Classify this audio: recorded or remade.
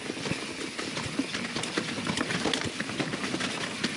recorded